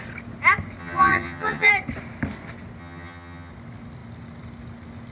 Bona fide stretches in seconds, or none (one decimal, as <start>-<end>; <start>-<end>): 0.0-0.8; 1.7-2.8; 3.5-5.1